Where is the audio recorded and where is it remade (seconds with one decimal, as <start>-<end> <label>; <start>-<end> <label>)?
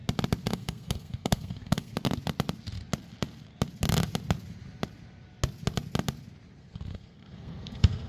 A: 0.0-0.5 recorded; 0.5-1.9 remade; 1.9-6.6 recorded; 6.6-8.1 remade